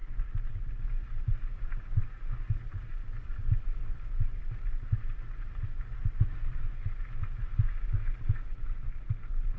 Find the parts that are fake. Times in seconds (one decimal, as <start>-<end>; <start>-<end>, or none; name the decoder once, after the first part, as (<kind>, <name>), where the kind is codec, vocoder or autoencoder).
none